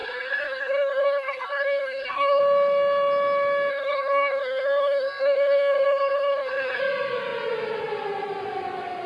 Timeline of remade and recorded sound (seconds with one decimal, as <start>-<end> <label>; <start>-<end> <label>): 0.0-2.4 remade; 2.4-3.7 recorded; 3.7-6.8 remade; 6.8-9.1 recorded